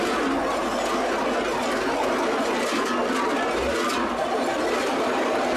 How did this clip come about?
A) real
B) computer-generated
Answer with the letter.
A